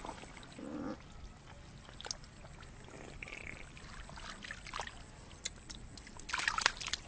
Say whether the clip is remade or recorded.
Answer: recorded